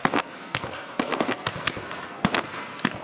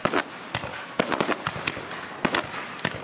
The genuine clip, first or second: second